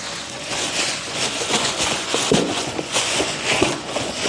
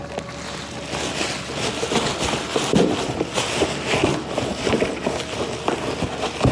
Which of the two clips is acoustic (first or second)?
second